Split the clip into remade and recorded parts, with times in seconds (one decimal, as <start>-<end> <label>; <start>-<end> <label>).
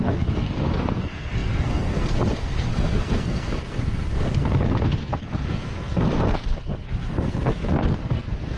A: 0.0-8.6 remade